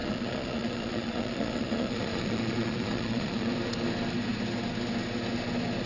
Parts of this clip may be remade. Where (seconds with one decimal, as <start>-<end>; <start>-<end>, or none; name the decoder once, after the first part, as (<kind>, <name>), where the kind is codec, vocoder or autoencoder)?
0.0-3.5 (vocoder, Vocos)